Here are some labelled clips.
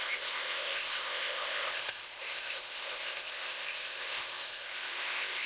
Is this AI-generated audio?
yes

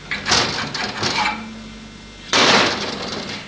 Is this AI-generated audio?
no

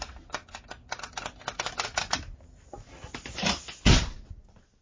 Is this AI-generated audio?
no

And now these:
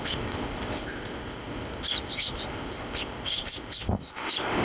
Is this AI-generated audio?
yes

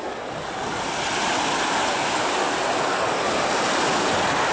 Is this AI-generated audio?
no